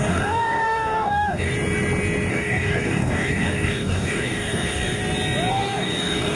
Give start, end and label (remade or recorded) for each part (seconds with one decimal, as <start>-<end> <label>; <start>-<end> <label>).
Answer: 0.0-1.5 remade; 1.5-2.3 recorded; 2.3-5.0 remade; 5.0-5.5 recorded; 5.5-6.4 remade